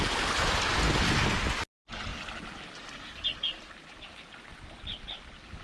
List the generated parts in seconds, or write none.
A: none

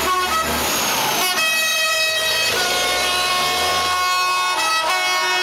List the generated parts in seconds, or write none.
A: 1.7-3.3